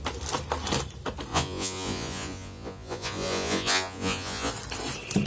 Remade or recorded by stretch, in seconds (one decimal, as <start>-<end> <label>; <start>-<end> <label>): 0.0-1.3 recorded; 1.3-4.5 remade; 4.5-5.3 recorded